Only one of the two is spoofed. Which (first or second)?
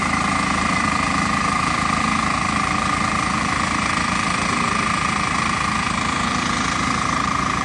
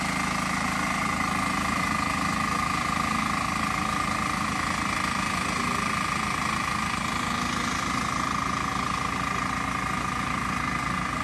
first